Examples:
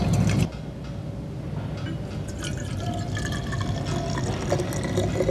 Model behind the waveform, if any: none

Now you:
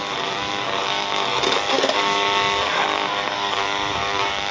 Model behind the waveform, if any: codec, DAC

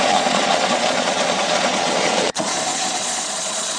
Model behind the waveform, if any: vocoder, Vocos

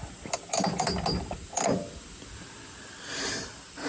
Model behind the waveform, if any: none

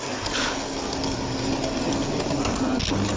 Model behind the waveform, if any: none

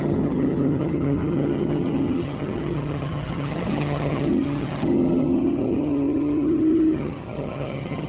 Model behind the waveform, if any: vocoder, HiFi-GAN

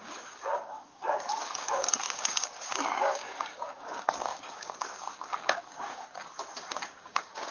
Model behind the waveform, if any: codec, DAC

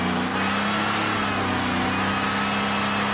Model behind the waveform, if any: none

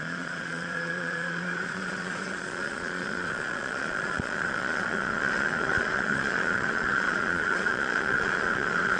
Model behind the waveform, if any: vocoder, Vocos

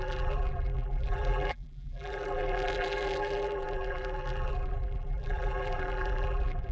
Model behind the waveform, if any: vocoder, BigVGAN v2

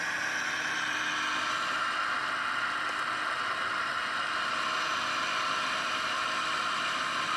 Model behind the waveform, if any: vocoder, BigVGAN v2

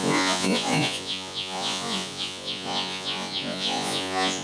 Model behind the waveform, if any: vocoder, Vocos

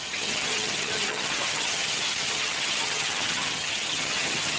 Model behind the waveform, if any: vocoder, HiFi-GAN